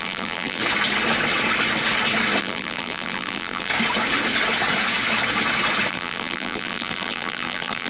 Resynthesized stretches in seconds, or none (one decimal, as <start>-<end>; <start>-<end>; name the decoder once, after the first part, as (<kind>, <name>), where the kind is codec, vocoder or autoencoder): 0.0-0.6 (vocoder, BigVGAN v2); 2.4-3.7; 5.9-7.9